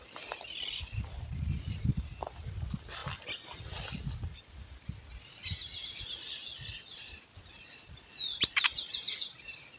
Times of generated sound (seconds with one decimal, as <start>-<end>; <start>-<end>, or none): 0.0-9.8